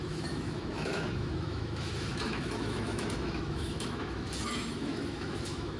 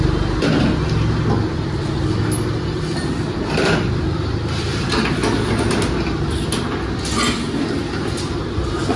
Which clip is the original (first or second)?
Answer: second